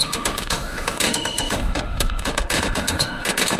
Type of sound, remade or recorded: remade